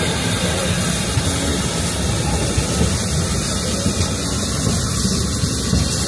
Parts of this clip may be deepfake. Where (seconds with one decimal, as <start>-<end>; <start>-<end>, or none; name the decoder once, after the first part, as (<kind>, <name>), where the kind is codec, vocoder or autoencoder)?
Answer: none